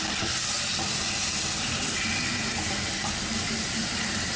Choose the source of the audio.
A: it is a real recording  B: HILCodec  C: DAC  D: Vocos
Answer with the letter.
A